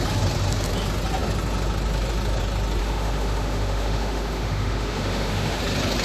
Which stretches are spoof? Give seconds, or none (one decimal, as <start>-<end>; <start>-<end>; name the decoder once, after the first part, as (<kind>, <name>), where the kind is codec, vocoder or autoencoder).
2.8-5.6 (autoencoder, DAC-VAE)